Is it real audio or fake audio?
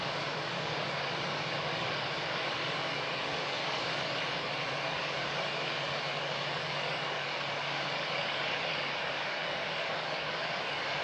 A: fake